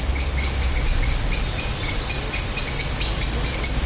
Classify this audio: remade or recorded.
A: recorded